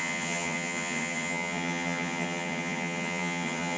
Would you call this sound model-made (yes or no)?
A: yes